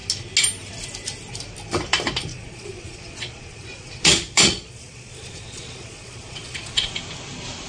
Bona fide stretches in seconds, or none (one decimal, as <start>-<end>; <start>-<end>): 0.0-2.3; 6.9-7.7